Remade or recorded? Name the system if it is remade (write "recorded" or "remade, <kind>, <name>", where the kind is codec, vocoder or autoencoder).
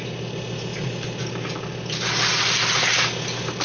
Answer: recorded